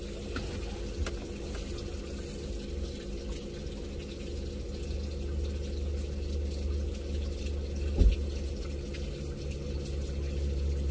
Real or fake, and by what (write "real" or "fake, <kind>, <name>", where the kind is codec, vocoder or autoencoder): real